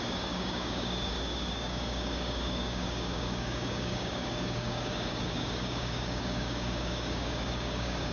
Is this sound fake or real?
fake